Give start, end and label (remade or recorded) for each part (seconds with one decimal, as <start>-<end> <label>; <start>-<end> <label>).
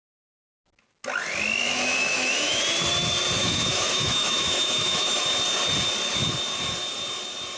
0.0-1.6 recorded; 1.6-2.6 remade; 2.6-3.4 recorded; 3.4-5.2 remade; 5.2-7.6 recorded